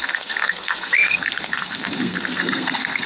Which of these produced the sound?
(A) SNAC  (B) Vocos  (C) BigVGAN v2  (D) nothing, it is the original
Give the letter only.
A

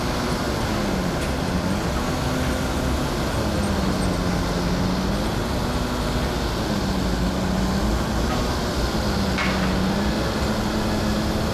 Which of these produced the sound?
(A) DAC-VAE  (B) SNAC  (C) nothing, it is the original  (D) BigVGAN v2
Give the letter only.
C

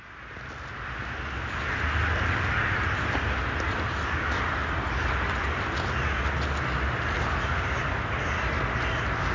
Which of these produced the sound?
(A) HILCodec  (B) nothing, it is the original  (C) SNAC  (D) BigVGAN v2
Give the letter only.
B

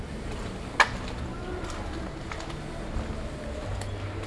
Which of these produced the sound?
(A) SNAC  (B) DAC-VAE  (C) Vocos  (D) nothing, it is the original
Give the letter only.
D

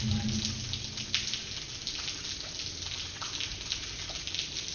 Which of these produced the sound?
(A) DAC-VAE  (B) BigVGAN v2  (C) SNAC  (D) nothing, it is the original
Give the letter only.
D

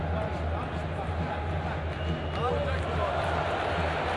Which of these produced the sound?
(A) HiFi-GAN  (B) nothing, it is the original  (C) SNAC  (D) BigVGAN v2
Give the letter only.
B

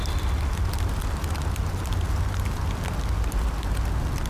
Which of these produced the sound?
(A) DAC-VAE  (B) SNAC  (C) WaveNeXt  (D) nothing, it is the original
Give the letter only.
D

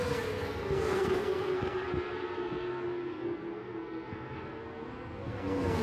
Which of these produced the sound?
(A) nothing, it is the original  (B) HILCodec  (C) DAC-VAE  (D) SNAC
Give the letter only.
D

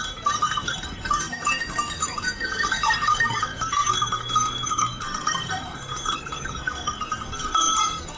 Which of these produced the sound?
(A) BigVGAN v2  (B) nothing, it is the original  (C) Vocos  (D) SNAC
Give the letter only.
D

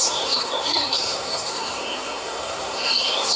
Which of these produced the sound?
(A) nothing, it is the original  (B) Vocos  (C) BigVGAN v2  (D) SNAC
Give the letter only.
D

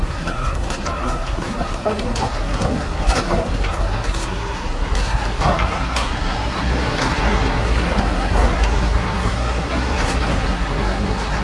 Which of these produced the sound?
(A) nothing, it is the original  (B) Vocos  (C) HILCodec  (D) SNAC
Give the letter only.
D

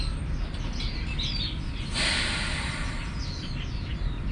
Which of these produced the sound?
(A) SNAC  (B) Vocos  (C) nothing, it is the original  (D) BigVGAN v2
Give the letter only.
C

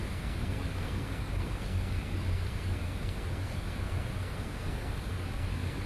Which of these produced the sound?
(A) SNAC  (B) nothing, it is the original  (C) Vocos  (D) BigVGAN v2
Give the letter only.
A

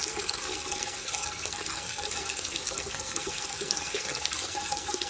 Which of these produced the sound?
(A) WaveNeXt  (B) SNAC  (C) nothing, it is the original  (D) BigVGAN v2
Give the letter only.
B